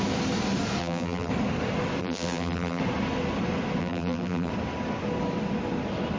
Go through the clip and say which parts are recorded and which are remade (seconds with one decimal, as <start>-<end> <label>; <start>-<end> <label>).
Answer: 0.0-0.8 recorded; 0.8-1.3 remade; 1.3-2.0 recorded; 2.0-2.8 remade; 2.8-3.8 recorded; 3.8-4.5 remade; 4.5-6.2 recorded